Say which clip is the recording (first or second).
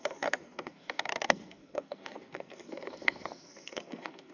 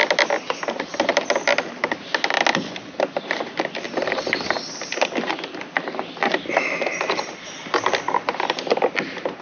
second